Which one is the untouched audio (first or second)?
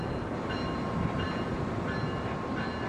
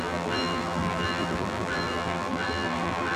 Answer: first